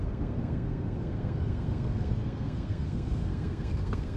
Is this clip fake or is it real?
fake